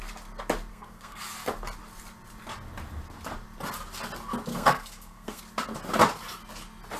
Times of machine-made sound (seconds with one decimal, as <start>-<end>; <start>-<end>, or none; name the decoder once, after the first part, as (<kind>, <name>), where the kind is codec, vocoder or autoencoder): 0.7-1.2 (codec, SNAC); 4.5-5.4